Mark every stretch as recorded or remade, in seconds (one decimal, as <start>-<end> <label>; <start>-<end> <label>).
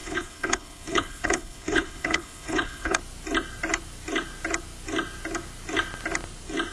0.0-3.0 remade; 3.0-6.7 recorded